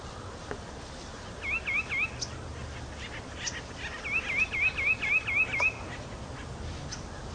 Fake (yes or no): no